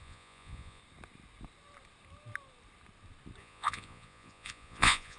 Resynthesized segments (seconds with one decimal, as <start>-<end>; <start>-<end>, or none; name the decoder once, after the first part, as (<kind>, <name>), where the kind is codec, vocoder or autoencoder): 0.0-0.8 (vocoder, Vocos); 3.4-5.2

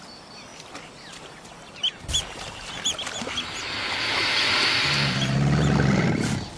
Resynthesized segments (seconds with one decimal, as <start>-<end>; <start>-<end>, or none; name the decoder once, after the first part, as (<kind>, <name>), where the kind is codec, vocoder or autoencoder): none

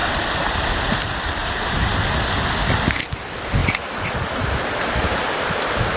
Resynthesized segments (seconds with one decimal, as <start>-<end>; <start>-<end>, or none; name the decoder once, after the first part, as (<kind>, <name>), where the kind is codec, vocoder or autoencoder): none

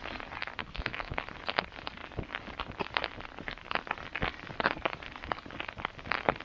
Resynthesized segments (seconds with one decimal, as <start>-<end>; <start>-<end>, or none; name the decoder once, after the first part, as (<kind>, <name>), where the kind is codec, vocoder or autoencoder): 0.6-1.2 (autoencoder, DAC-VAE)